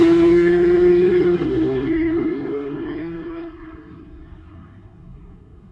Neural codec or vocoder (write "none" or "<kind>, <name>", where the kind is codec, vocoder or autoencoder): codec, SNAC